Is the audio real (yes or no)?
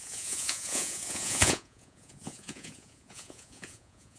no